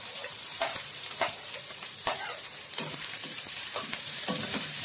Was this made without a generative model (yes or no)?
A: no